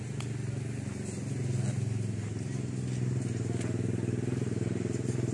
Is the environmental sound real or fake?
real